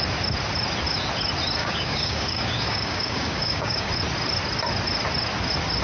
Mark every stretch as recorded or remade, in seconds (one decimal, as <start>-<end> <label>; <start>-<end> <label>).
0.0-1.6 recorded; 1.6-3.9 remade; 3.9-5.8 recorded